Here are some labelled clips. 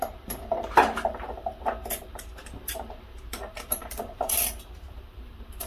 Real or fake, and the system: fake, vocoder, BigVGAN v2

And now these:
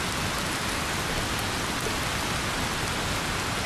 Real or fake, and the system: real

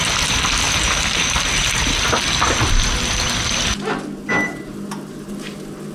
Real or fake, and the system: real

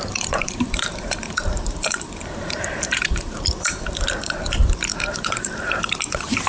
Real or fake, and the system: fake, vocoder, BigVGAN v2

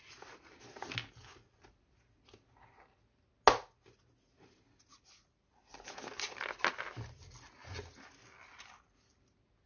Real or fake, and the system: real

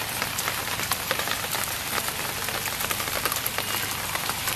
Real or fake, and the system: fake, vocoder, BigVGAN v2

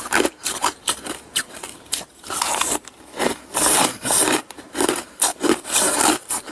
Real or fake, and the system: fake, vocoder, BigVGAN v2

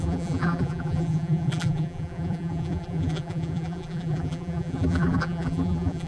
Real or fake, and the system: fake, vocoder, BigVGAN v2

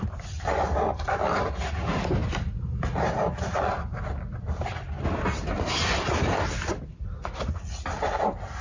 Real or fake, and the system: real